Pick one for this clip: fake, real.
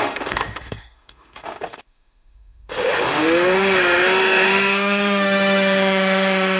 fake